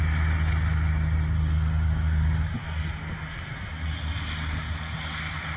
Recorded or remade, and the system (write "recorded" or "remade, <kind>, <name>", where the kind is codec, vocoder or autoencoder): recorded